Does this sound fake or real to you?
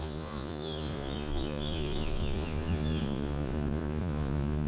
fake